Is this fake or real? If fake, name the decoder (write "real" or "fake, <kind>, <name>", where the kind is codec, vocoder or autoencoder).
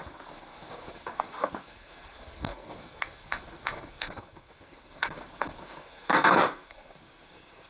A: fake, codec, SNAC